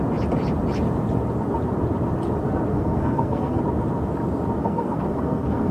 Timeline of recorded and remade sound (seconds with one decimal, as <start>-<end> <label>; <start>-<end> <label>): 0.0-2.7 recorded; 2.7-3.6 remade; 3.6-4.6 recorded; 4.6-5.7 remade